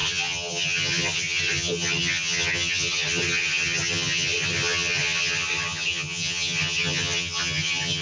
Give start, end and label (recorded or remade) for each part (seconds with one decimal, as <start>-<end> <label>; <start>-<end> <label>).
0.0-8.0 remade